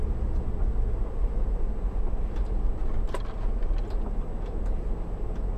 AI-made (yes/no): no